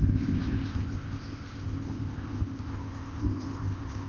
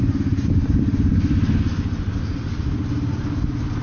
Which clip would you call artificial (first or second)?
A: first